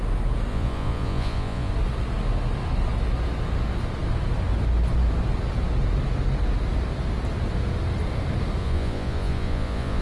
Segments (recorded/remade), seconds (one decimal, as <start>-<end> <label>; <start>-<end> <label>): 0.0-0.5 recorded; 0.5-1.7 remade; 1.7-8.6 recorded; 8.6-10.0 remade